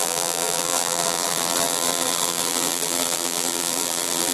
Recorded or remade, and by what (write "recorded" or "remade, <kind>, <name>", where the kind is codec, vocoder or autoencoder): remade, vocoder, BigVGAN v2